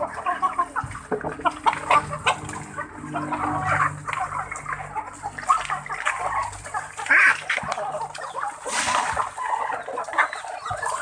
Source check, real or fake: real